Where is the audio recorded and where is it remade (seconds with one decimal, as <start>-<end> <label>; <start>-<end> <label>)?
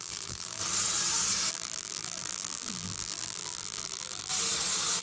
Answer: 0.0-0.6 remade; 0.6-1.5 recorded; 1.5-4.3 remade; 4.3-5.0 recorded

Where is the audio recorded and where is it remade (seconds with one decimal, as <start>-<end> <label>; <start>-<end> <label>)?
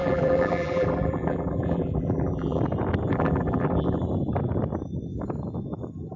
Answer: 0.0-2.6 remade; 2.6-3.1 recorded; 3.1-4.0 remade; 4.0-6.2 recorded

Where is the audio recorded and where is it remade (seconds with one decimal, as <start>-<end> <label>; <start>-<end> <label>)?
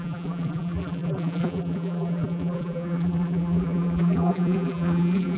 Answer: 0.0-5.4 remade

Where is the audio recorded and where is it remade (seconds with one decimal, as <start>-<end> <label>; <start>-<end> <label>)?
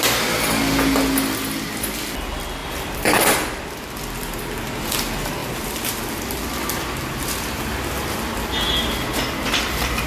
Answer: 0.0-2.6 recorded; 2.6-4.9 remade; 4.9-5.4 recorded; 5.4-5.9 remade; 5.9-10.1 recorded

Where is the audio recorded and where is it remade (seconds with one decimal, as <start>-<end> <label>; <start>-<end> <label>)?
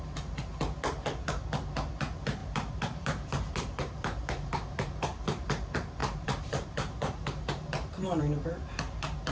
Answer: 0.0-2.4 recorded; 2.4-5.5 remade; 5.5-6.0 recorded; 6.0-8.2 remade; 8.2-9.3 recorded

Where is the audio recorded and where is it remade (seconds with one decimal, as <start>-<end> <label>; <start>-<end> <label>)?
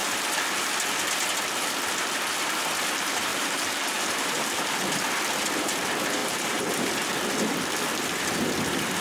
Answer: 0.0-3.3 recorded; 3.3-4.6 remade; 4.6-6.2 recorded; 6.2-6.7 remade; 6.7-9.0 recorded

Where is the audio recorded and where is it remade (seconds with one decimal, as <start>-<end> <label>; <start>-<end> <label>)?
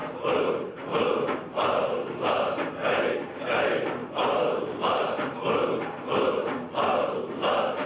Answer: 0.0-2.7 remade; 2.7-4.0 recorded; 4.0-5.4 remade; 5.4-7.9 recorded